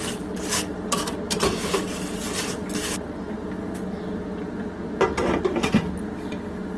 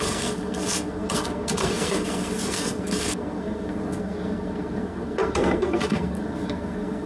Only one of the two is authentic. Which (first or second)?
first